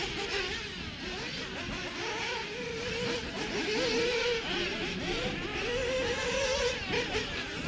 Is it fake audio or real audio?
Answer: real